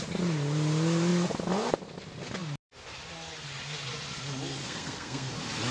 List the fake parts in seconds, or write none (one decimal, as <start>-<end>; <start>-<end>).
4.6-5.3